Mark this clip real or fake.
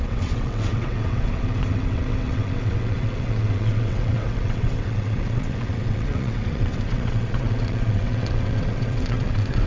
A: fake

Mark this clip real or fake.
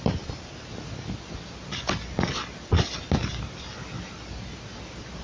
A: real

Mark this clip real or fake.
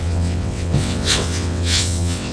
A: fake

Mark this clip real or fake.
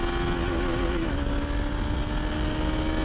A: real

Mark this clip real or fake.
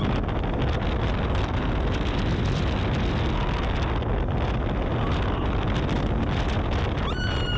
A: real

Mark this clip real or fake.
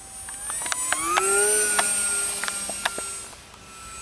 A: real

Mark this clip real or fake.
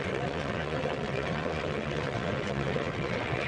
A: fake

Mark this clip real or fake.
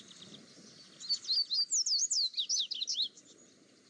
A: real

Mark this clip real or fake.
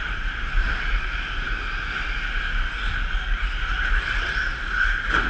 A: real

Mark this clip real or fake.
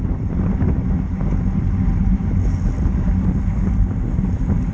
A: real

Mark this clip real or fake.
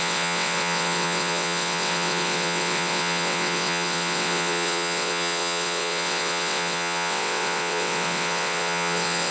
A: fake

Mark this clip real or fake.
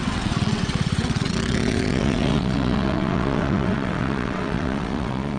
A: fake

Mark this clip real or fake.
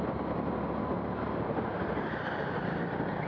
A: real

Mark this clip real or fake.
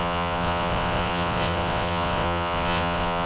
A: fake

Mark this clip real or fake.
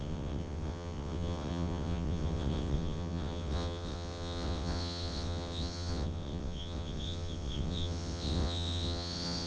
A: fake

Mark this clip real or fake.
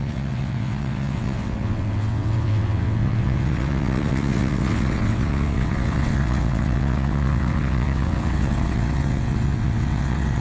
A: fake